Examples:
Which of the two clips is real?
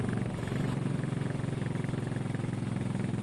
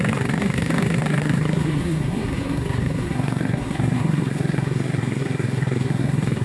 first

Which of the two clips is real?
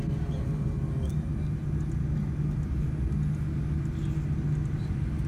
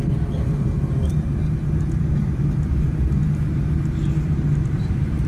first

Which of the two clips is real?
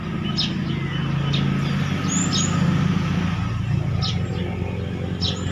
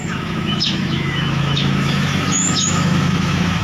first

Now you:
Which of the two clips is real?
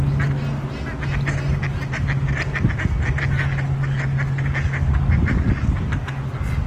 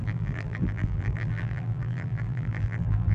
first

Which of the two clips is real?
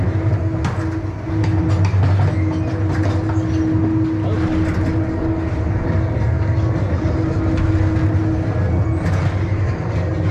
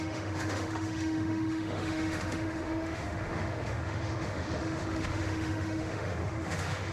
first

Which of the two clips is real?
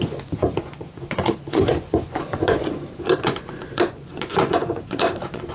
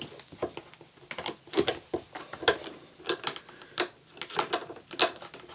second